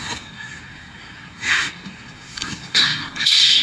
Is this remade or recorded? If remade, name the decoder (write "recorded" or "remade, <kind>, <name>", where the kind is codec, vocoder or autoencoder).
remade, codec, SNAC